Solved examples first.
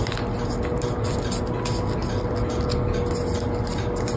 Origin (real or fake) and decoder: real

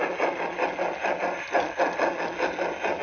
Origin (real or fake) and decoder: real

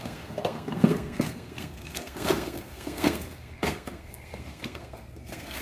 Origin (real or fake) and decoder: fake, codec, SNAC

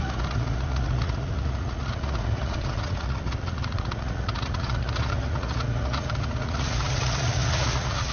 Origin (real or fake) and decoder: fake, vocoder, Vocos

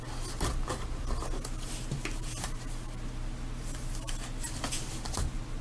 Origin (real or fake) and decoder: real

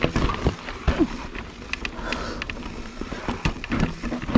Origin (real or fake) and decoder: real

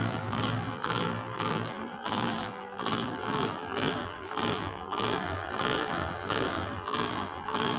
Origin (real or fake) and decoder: fake, vocoder, BigVGAN v2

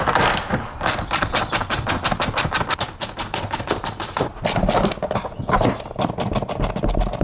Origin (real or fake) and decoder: real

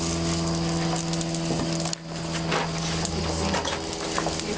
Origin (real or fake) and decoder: real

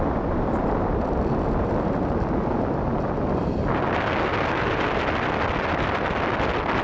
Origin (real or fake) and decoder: real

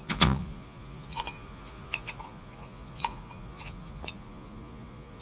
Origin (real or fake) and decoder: fake, vocoder, Vocos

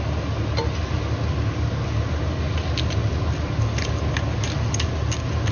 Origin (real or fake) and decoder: real